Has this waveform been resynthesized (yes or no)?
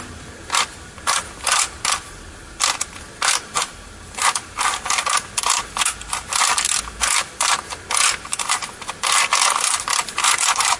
no